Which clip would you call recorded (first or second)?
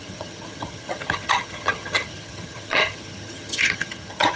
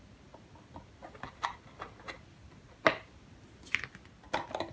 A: second